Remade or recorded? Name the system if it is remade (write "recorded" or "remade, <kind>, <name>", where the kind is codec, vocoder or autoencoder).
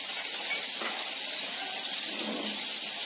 remade, vocoder, BigVGAN v2